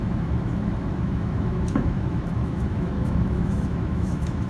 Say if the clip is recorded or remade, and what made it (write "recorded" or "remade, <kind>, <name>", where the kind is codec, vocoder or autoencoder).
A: remade, autoencoder, DAC-VAE